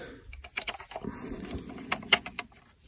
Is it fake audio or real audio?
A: real